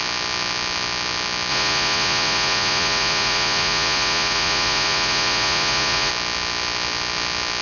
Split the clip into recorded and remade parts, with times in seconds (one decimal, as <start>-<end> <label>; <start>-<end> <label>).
0.0-1.5 recorded; 1.5-6.1 remade; 6.1-7.6 recorded